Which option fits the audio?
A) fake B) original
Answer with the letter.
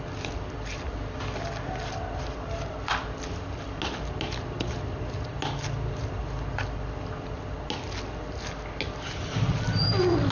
B